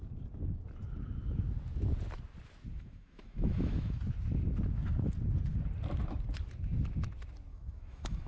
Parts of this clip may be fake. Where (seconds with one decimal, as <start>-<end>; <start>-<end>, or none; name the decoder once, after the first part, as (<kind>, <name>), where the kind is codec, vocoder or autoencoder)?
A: 2.7-4.0 (autoencoder, DAC-VAE); 7.5-8.3